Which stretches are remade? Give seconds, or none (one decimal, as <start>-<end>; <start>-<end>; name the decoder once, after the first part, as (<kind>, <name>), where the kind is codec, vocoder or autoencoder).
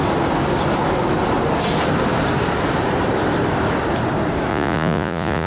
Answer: 4.5-5.5 (vocoder, Vocos)